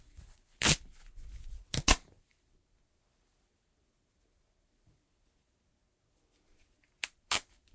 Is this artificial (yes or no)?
no